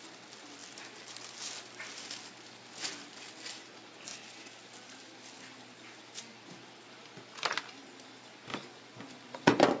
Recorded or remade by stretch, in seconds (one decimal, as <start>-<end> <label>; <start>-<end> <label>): 0.0-8.5 recorded; 8.5-9.8 remade